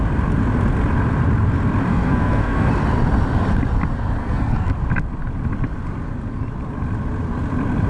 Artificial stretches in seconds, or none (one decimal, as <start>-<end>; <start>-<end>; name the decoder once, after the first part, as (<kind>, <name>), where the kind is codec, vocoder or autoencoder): 1.9-2.7 (codec, SNAC); 4.2-4.7